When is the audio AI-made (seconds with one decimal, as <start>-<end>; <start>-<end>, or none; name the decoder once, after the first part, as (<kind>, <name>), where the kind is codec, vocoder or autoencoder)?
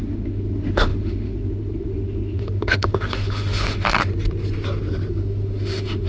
0.0-4.1 (autoencoder, DAC-VAE); 5.1-6.1